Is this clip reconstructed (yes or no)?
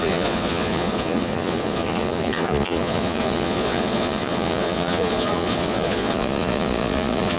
yes